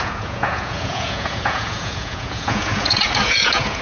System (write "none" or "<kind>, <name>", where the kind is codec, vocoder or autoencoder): vocoder, Vocos